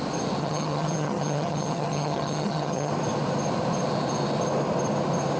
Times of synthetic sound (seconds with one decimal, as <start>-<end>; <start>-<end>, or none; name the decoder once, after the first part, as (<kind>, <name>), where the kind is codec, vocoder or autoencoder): 0.4-2.9 (vocoder, HiFi-GAN)